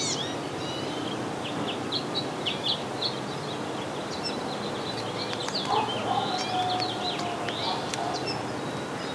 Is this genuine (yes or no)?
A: yes